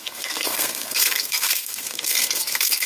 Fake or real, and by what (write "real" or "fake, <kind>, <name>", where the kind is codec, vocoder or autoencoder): fake, codec, SNAC